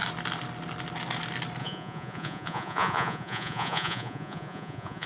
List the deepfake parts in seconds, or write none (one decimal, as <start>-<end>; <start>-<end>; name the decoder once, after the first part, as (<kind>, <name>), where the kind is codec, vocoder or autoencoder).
1.6-5.1 (vocoder, Vocos)